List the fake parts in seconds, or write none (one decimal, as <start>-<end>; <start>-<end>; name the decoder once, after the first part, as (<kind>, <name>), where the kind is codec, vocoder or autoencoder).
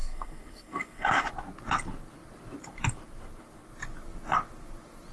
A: 0.0-1.3 (codec, SNAC)